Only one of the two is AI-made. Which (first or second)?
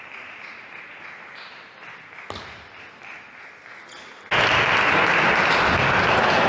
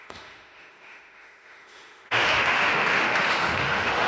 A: second